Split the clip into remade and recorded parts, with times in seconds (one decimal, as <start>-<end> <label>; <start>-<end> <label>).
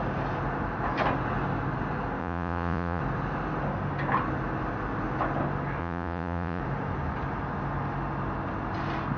0.0-2.2 recorded; 2.2-3.0 remade; 3.0-5.8 recorded; 5.8-6.6 remade; 6.6-9.2 recorded